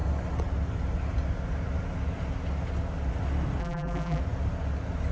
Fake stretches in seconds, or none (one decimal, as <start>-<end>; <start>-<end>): 3.6-4.2